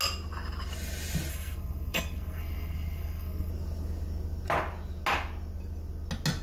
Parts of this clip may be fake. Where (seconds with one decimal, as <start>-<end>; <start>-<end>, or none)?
1.3-3.5